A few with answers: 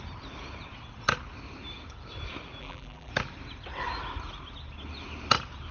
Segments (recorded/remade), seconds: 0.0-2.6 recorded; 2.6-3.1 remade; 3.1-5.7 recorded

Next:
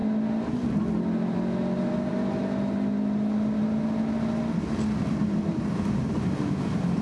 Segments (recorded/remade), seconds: 0.0-7.0 recorded

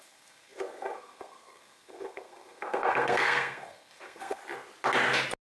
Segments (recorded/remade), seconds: 0.0-4.4 remade; 4.4-5.6 recorded

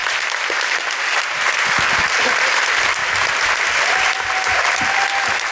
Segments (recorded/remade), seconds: 0.0-5.5 recorded